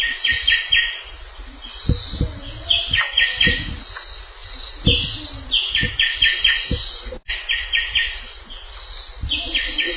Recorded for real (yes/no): yes